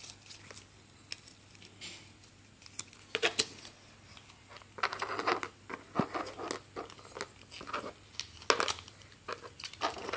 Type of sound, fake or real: real